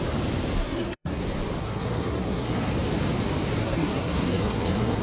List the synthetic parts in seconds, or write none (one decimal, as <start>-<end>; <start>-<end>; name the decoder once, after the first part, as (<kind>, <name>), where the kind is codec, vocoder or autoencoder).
0.6-1.2 (codec, SNAC); 1.6-2.7; 3.6-5.0